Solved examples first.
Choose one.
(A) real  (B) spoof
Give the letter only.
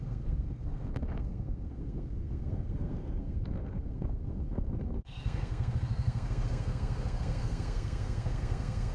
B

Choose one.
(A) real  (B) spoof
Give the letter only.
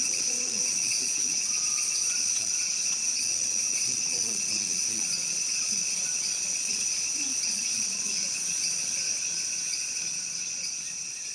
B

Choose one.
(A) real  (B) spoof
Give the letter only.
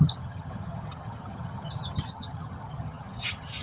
B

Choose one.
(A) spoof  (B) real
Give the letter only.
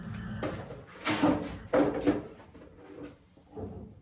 B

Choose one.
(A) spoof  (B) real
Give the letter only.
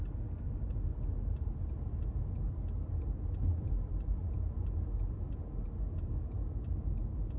B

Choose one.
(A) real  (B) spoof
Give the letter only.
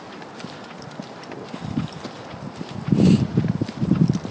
A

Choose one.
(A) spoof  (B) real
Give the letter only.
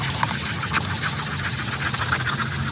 B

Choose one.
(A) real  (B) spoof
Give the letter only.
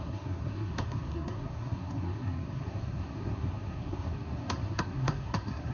B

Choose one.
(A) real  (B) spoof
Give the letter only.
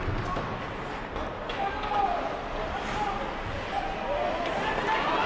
A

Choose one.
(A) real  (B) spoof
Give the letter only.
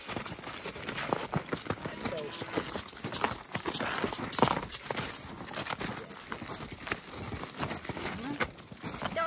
A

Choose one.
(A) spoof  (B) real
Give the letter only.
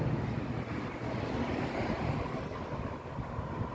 B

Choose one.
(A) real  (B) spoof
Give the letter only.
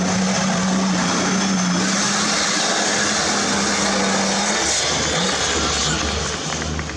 A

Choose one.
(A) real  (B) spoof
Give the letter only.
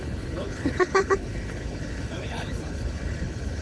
B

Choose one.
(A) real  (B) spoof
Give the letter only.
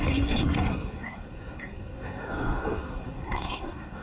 B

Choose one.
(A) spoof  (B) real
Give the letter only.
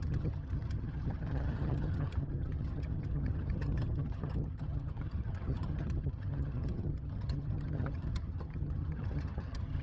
A